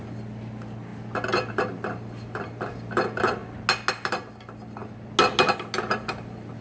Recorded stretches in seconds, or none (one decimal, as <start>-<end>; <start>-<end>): 3.4-3.9; 4.8-5.9